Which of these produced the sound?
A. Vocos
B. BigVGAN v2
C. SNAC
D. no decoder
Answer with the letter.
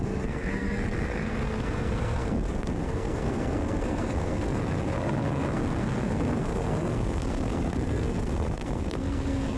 C